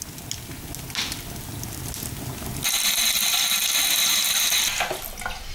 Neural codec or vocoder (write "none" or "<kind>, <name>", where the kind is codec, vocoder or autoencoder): none